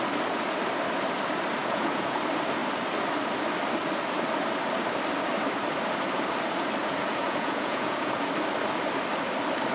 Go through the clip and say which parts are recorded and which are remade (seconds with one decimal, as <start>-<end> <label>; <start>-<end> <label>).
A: 0.0-1.6 recorded; 1.6-2.2 remade; 2.2-6.8 recorded; 6.8-8.3 remade; 8.3-9.7 recorded